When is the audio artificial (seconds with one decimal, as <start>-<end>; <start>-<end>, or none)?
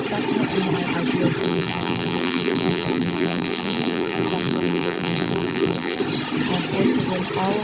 1.4-6.0